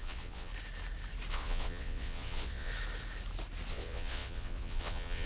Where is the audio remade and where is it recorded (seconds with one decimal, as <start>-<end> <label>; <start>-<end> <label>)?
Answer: 0.0-0.5 remade; 0.5-1.3 recorded; 1.3-2.7 remade; 2.7-3.7 recorded; 3.7-5.3 remade